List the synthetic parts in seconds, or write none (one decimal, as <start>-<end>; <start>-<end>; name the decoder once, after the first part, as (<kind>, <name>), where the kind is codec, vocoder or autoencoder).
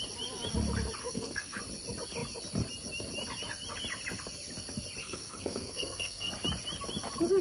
1.0-1.6 (codec, SNAC); 5.0-6.3